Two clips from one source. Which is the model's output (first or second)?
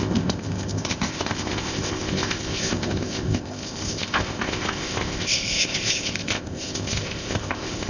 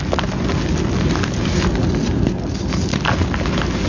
first